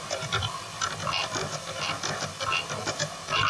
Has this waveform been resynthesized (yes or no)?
no